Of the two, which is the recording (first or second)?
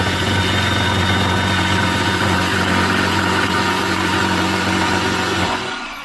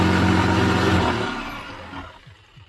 second